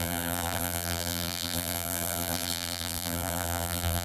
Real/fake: fake